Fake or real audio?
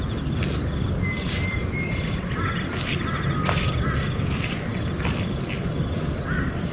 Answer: real